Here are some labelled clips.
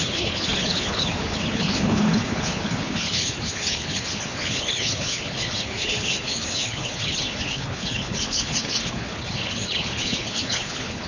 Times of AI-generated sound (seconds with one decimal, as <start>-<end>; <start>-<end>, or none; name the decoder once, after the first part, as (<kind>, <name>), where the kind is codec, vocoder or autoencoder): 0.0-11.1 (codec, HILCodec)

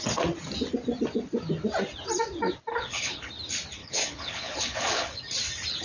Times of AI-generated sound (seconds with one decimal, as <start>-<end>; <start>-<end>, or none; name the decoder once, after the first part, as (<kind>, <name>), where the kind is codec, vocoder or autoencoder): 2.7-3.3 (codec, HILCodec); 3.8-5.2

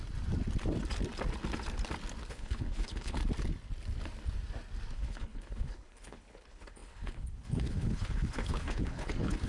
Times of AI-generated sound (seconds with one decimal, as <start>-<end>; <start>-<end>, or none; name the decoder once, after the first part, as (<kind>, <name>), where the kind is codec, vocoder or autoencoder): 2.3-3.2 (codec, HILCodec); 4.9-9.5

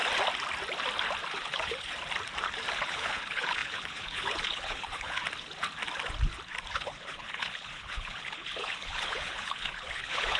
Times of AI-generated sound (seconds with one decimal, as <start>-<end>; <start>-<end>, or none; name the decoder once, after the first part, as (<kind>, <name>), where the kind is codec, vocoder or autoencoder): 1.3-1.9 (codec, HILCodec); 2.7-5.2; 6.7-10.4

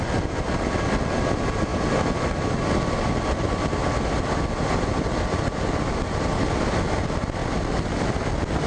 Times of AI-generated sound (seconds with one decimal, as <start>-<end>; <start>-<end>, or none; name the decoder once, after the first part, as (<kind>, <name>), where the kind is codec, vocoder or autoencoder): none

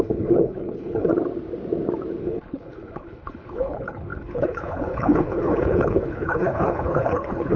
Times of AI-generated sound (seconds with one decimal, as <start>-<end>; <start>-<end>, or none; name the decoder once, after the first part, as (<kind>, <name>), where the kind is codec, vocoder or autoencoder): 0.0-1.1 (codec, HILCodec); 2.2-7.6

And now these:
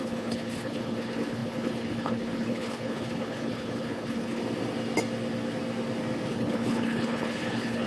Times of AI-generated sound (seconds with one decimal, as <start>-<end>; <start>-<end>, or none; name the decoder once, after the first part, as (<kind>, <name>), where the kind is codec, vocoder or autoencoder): 0.0-4.4 (codec, HILCodec); 6.3-7.9